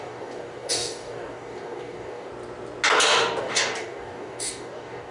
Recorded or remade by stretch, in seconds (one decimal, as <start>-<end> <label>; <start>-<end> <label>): 0.0-2.3 remade; 2.3-3.4 recorded; 3.4-5.1 remade